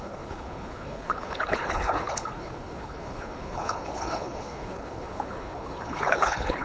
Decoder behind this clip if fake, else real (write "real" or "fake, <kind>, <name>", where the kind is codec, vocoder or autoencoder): fake, codec, HILCodec